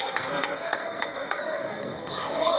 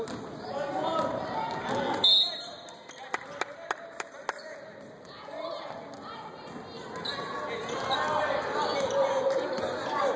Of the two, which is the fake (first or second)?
first